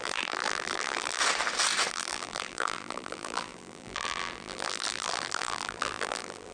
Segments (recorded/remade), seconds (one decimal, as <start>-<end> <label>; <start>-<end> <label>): 0.0-1.2 remade; 1.2-1.9 recorded; 1.9-6.5 remade